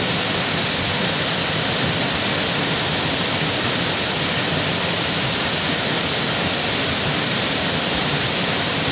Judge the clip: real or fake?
real